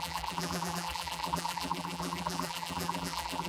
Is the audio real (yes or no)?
no